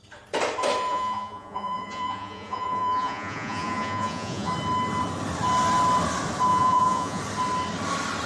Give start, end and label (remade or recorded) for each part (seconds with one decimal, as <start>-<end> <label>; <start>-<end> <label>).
0.0-0.9 recorded; 0.9-4.5 remade; 4.5-6.5 recorded; 6.5-7.2 remade; 7.2-8.3 recorded